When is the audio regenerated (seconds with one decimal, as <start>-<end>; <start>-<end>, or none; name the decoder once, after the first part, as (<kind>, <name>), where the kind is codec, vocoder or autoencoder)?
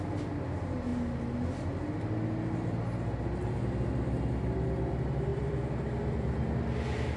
5.3-6.6 (vocoder, BigVGAN v2)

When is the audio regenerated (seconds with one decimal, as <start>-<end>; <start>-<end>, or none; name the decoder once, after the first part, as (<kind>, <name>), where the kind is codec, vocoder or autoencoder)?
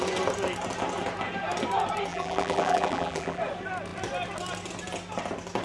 2.1-3.4 (vocoder, BigVGAN v2)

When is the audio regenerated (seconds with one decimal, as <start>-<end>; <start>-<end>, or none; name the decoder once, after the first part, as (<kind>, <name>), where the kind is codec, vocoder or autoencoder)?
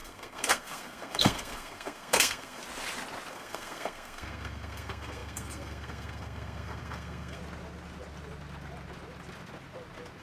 0.0-2.6 (codec, SNAC); 3.3-7.4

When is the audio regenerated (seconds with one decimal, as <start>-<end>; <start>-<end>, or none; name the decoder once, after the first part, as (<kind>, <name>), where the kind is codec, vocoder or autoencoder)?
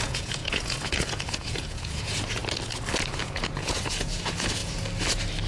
0.0-2.4 (vocoder, Vocos); 3.2-4.6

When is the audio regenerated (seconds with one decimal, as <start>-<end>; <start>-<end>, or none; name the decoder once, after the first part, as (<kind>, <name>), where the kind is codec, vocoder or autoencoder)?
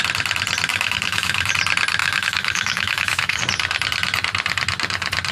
0.7-1.5 (autoencoder, DAC-VAE); 2.0-3.4